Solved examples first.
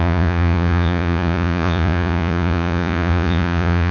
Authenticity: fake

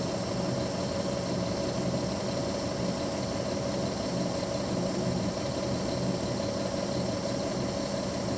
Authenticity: real